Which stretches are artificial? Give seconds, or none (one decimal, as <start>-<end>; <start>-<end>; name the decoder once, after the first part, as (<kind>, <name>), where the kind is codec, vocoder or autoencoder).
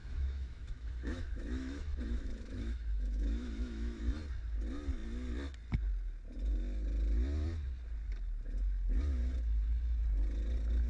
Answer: 0.0-4.0 (autoencoder, DAC-VAE)